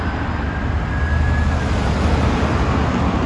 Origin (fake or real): real